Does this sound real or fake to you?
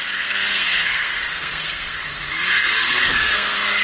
fake